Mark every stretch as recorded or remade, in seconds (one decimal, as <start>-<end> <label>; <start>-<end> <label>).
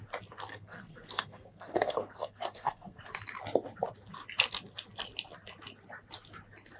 0.0-0.5 recorded; 0.5-3.0 remade; 3.0-6.8 recorded